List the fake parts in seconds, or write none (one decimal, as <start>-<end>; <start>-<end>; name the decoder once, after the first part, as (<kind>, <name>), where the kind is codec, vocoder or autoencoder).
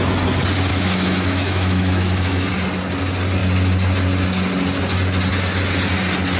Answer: 0.7-2.5 (autoencoder, DAC-VAE)